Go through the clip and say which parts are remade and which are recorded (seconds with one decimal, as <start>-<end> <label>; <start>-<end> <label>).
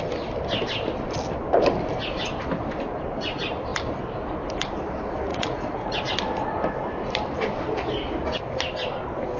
0.0-5.3 recorded; 5.3-6.0 remade; 6.0-9.4 recorded